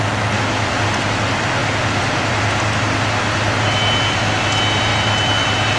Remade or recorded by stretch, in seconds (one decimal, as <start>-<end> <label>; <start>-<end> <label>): 0.0-4.9 recorded; 4.9-5.8 remade